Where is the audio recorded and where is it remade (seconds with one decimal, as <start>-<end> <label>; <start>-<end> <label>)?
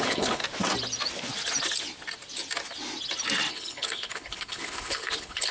0.0-0.4 remade; 0.4-3.5 recorded; 3.5-5.5 remade